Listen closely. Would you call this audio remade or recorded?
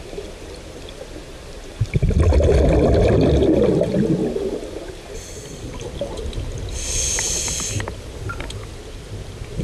recorded